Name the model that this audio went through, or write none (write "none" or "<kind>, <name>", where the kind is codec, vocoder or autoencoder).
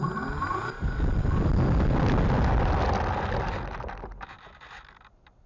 none